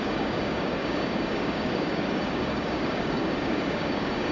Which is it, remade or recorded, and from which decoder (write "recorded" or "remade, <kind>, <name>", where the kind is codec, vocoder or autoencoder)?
remade, codec, DAC